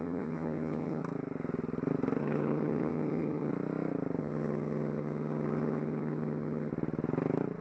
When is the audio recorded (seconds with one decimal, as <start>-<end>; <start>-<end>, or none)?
1.0-2.2; 3.5-4.2; 6.7-7.6